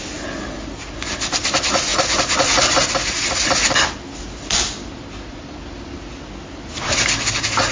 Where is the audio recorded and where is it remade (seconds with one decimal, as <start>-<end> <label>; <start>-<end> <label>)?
0.0-7.7 recorded